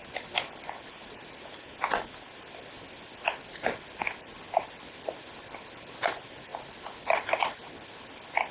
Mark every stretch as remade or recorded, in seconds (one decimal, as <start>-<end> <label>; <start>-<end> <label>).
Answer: 0.0-4.3 recorded; 4.3-5.0 remade; 5.0-8.5 recorded